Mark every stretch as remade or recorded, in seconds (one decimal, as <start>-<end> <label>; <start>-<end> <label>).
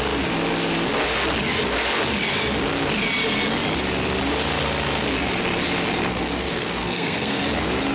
0.0-6.1 recorded; 6.1-7.4 remade; 7.4-7.9 recorded